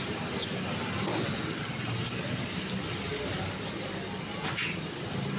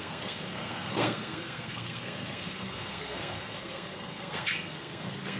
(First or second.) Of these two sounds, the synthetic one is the second